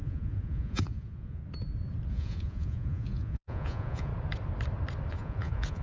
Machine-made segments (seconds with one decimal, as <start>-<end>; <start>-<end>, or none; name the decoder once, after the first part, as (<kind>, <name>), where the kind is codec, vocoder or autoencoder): 0.0-1.4 (vocoder, Vocos); 2.1-4.1; 5.1-5.8